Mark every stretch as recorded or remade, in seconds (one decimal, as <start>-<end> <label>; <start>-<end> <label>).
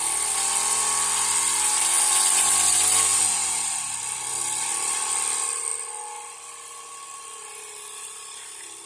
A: 0.0-8.9 recorded